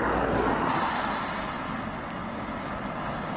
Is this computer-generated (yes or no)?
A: no